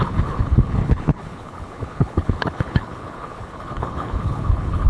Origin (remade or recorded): remade